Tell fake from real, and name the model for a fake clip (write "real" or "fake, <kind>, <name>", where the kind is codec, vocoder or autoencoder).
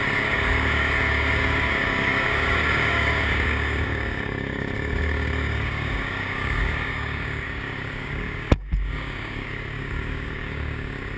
fake, codec, DAC